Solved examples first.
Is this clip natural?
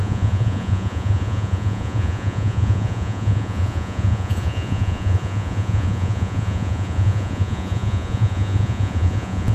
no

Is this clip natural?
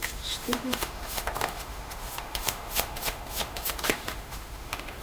no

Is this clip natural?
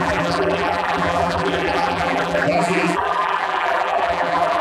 no